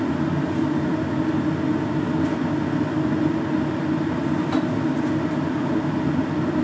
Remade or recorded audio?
recorded